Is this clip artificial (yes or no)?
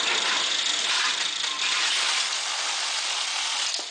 no